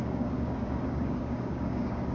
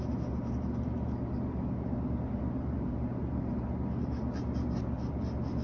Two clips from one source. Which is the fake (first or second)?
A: first